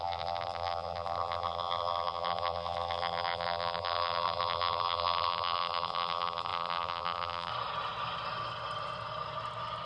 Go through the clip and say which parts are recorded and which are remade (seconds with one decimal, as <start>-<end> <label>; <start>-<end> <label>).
0.0-7.5 remade; 7.5-9.9 recorded